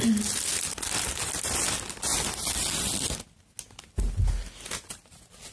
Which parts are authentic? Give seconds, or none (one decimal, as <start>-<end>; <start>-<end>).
0.0-5.5